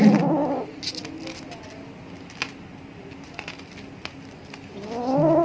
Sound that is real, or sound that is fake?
real